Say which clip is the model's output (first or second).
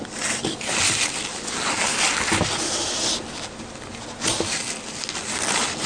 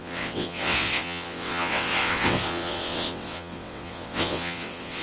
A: second